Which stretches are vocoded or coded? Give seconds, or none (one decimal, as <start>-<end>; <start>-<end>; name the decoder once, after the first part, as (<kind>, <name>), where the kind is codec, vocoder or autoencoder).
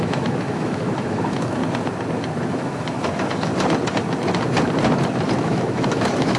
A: 0.0-1.6 (autoencoder, DAC-VAE); 2.5-3.5; 5.4-6.4